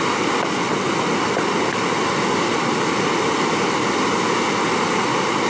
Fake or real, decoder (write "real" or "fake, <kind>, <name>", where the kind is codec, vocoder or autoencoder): real